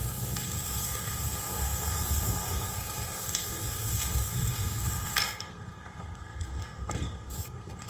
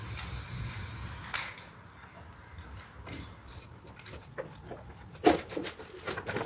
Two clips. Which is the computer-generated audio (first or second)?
first